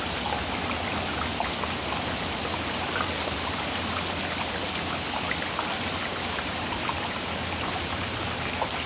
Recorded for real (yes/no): yes